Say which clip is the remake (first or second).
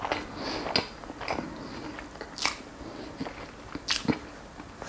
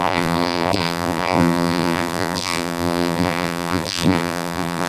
second